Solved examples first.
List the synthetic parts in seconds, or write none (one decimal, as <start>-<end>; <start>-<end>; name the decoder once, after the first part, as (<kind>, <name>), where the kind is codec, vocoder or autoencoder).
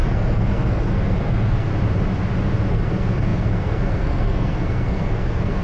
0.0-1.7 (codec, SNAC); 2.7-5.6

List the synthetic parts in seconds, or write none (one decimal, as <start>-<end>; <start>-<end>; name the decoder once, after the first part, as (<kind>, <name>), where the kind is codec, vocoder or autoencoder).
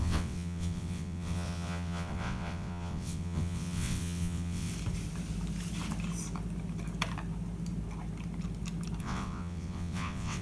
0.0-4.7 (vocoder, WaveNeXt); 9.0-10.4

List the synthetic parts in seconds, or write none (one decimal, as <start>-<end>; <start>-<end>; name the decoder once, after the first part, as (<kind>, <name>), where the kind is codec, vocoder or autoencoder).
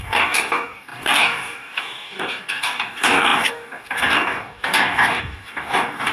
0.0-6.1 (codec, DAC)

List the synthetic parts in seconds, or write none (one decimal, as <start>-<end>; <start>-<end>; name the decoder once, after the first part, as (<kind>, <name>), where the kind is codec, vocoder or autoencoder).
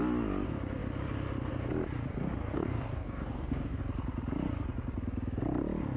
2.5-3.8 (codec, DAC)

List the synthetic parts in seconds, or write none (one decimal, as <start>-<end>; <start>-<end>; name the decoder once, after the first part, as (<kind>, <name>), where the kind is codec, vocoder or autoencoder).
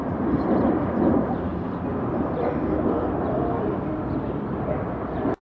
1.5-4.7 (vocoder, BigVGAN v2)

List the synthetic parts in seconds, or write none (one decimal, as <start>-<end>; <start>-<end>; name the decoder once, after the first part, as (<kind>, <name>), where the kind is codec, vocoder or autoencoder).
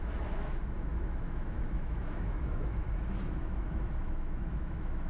0.0-5.1 (autoencoder, DAC-VAE)